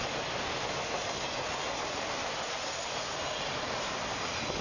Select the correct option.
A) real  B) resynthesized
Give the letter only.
A